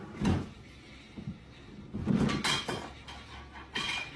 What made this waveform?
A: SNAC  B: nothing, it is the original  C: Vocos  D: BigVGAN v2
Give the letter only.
B